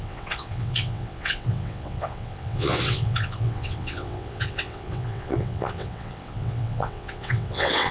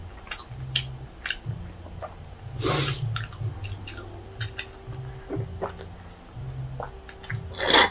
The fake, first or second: first